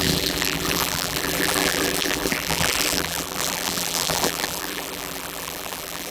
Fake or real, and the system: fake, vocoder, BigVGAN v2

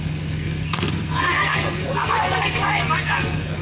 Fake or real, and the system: fake, codec, SNAC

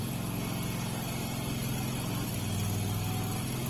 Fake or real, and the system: real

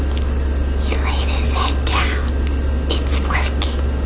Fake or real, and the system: real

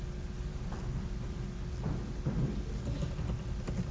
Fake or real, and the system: real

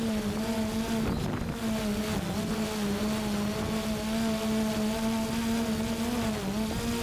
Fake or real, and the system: real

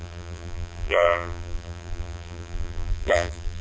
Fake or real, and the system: fake, vocoder, BigVGAN v2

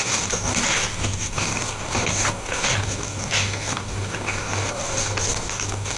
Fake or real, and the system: fake, codec, DAC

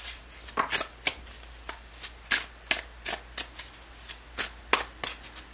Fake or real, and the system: real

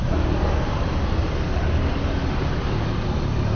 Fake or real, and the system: real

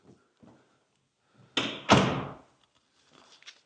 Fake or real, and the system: real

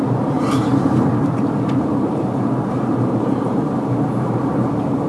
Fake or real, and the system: fake, vocoder, BigVGAN v2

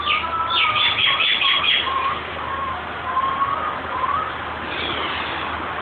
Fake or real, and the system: real